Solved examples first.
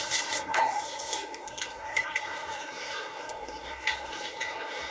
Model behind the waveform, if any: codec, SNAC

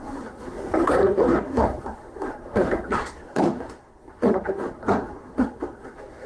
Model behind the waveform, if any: codec, SNAC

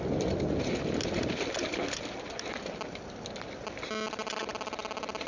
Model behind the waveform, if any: none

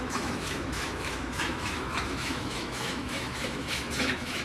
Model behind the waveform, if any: autoencoder, DAC-VAE